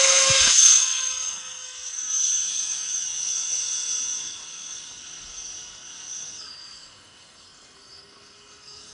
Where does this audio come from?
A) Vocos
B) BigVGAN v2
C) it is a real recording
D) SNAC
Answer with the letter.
D